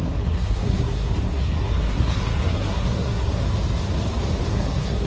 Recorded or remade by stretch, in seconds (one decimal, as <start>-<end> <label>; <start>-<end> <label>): 0.0-3.4 remade; 3.4-4.5 recorded; 4.5-5.1 remade